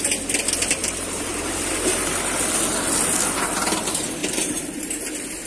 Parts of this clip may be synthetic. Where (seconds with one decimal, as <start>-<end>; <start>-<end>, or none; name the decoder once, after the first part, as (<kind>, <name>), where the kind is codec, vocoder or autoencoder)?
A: 0.8-2.1 (vocoder, BigVGAN v2); 4.2-4.9